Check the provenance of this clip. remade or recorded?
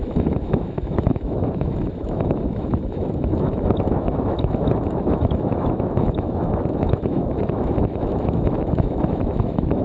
remade